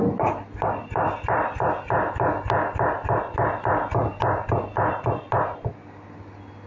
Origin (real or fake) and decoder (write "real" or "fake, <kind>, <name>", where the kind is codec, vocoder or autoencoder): real